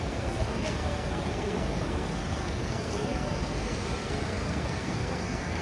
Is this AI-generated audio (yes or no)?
yes